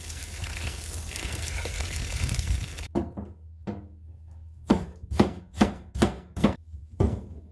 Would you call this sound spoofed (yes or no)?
yes